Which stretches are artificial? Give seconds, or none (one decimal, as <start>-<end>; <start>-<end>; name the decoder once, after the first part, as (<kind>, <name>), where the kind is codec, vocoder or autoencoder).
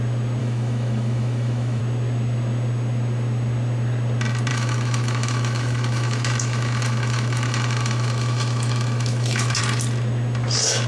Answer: 0.4-1.8 (autoencoder, DAC-VAE); 4.5-9.6